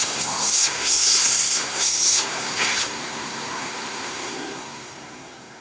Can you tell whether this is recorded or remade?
remade